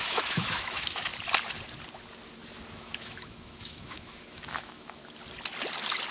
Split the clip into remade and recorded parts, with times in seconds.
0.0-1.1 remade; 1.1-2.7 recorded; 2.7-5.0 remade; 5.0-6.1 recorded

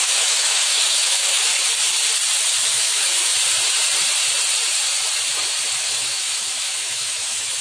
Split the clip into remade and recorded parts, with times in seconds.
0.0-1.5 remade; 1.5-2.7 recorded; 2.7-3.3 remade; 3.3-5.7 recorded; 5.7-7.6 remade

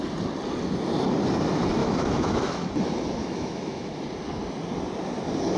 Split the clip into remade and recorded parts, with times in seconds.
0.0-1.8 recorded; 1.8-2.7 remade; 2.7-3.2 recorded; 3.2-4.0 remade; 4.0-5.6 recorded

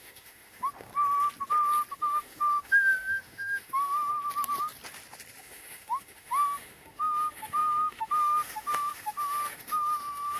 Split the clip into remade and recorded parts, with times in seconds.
0.0-0.9 remade; 0.9-1.9 recorded; 1.9-4.1 remade; 4.1-5.4 recorded; 5.4-10.4 remade